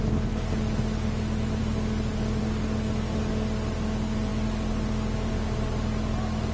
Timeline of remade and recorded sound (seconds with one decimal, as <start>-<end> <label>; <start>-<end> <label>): 0.0-6.5 recorded